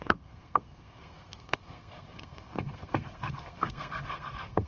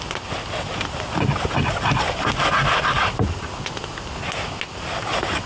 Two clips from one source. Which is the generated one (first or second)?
first